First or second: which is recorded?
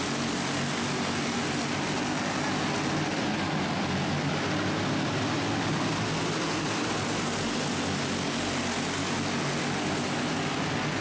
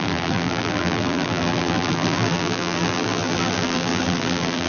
first